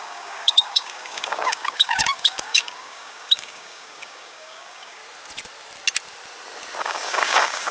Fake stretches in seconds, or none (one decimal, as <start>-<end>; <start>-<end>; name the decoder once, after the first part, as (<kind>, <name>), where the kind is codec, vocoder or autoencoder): 0.0-5.0 (codec, DAC); 6.8-7.7